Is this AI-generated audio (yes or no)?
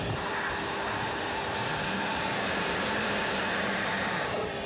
no